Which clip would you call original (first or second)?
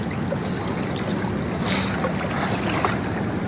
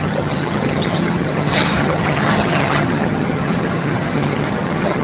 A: first